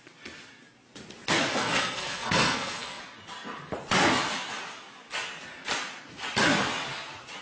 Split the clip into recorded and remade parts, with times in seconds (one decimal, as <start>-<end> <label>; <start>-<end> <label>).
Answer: 0.0-1.5 recorded; 1.5-3.0 remade; 3.0-7.4 recorded